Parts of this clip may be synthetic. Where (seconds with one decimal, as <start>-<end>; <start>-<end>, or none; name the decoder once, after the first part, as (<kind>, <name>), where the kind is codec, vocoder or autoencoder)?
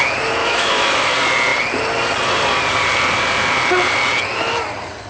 0.4-1.1 (autoencoder, DAC-VAE)